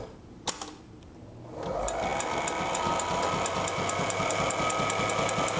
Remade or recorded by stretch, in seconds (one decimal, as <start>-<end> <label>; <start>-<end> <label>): 0.0-5.6 recorded